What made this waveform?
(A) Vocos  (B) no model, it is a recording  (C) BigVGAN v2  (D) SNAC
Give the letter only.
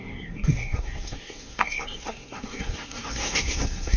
D